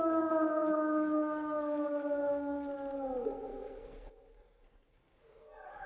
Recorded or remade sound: remade